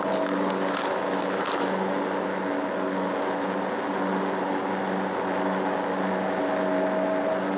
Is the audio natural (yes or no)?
yes